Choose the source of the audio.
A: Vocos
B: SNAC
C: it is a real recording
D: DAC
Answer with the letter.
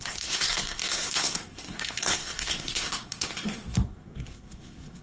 B